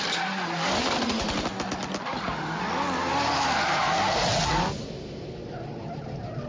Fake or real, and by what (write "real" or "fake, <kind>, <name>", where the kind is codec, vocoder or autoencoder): real